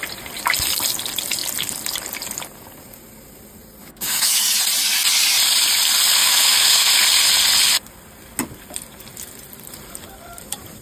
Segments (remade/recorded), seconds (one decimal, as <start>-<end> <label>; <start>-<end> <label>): 0.0-3.8 recorded; 3.8-4.4 remade; 4.4-6.2 recorded; 6.2-6.9 remade; 6.9-10.8 recorded